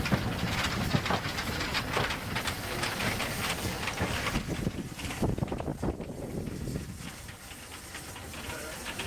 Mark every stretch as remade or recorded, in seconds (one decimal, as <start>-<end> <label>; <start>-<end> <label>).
0.0-5.7 remade; 5.7-7.0 recorded; 7.0-9.1 remade